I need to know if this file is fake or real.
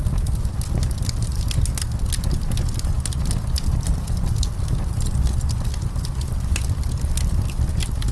real